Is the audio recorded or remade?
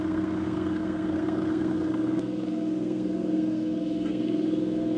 remade